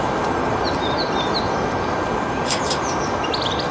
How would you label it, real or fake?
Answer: real